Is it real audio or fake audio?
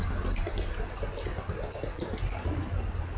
real